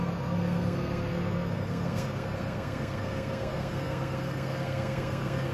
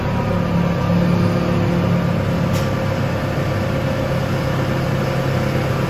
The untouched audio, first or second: second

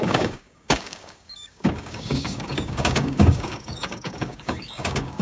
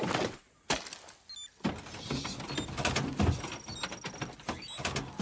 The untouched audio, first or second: second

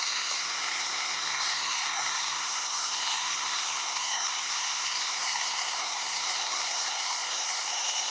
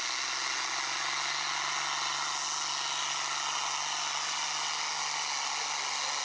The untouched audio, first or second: second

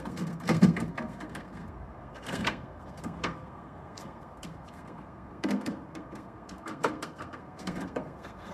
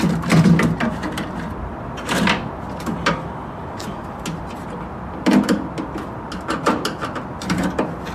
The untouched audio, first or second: second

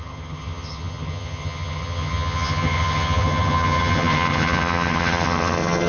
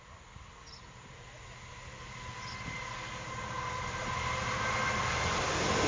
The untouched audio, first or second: second